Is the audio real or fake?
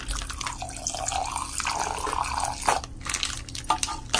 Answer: real